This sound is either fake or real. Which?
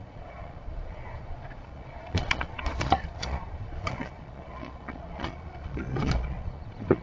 fake